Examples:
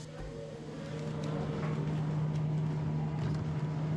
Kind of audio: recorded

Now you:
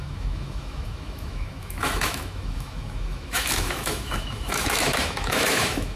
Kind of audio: remade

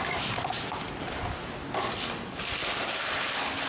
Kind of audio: recorded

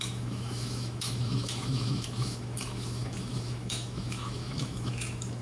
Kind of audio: remade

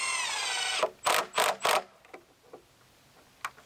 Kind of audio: recorded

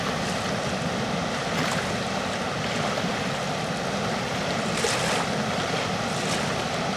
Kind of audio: recorded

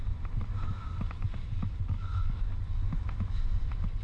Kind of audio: recorded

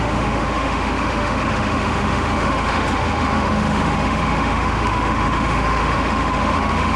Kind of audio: remade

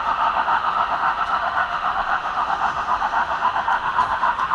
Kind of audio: remade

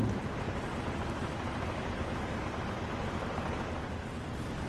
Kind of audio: recorded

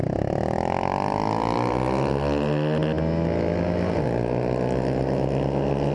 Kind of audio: recorded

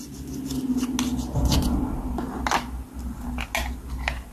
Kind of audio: recorded